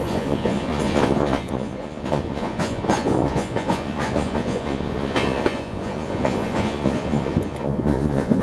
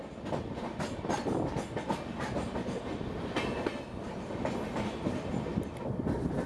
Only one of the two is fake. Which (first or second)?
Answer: first